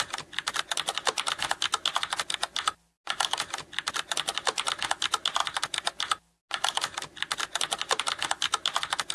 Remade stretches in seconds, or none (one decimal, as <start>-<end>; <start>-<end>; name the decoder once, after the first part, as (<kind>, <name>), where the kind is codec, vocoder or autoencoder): none